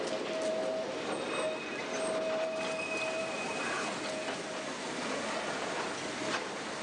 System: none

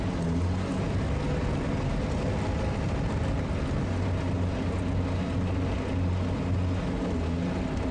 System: none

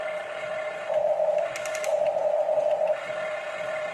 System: none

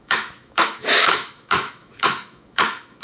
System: autoencoder, DAC-VAE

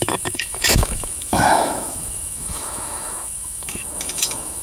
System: autoencoder, DAC-VAE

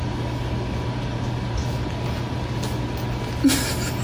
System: none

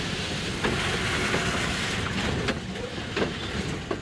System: none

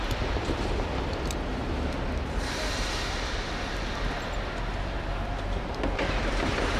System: none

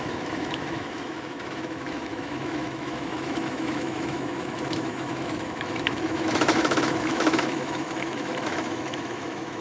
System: autoencoder, DAC-VAE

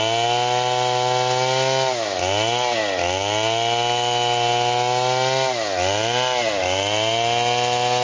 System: none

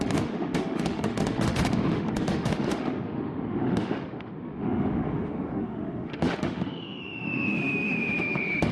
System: autoencoder, DAC-VAE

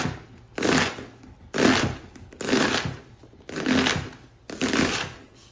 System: none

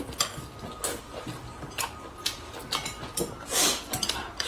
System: none